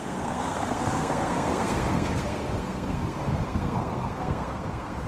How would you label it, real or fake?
fake